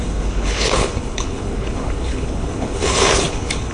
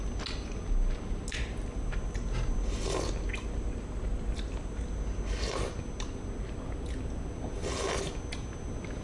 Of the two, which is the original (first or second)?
second